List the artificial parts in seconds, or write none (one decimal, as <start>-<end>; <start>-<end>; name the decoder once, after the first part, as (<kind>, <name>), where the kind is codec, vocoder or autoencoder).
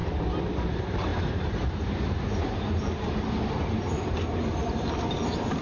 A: 0.7-5.6 (vocoder, BigVGAN v2)